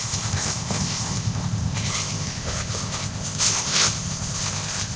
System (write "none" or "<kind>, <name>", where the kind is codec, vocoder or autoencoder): codec, ZipCodec